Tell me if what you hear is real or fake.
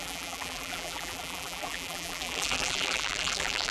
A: fake